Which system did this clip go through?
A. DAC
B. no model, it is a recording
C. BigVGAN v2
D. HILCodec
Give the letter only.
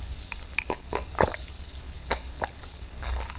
A